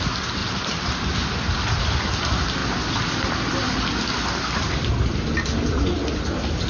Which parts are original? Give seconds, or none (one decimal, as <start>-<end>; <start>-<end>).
0.0-0.4; 0.9-2.6; 4.9-6.7